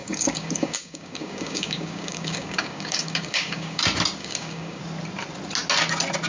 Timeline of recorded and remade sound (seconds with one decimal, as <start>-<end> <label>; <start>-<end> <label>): 0.0-3.8 remade; 3.8-4.2 recorded; 4.2-4.8 remade; 4.8-6.3 recorded